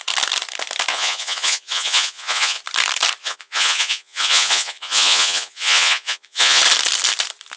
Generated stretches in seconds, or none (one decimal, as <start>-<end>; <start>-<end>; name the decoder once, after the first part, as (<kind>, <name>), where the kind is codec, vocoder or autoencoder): 0.9-2.6 (vocoder, Vocos); 3.2-6.6